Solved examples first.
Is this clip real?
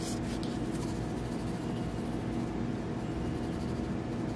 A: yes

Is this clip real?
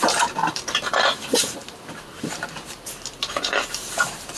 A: no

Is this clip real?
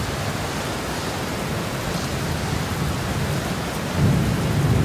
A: yes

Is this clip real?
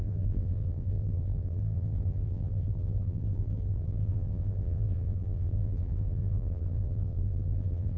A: no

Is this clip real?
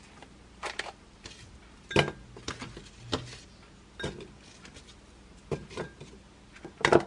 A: yes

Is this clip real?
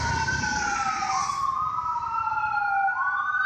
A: no